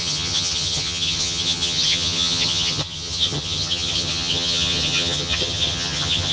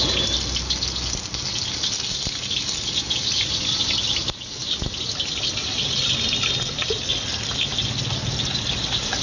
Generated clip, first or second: first